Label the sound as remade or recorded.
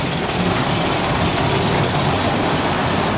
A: recorded